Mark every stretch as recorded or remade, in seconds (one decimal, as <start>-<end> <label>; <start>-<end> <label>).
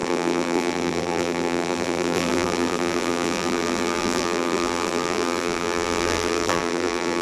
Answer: 0.0-7.2 remade